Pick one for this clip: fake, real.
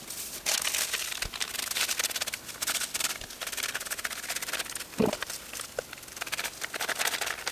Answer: real